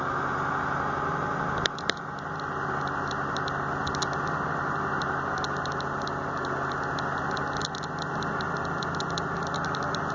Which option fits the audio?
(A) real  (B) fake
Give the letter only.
A